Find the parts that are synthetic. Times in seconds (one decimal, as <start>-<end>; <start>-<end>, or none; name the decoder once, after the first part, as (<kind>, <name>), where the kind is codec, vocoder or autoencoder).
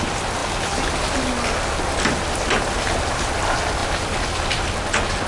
none